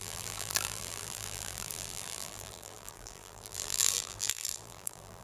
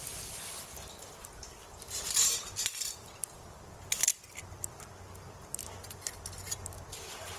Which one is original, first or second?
second